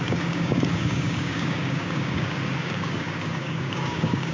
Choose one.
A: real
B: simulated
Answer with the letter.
B